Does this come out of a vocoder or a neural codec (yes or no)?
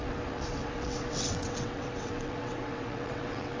yes